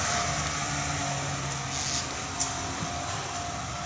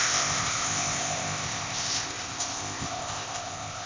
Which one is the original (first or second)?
first